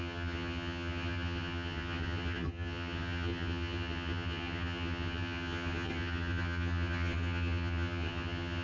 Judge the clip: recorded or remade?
remade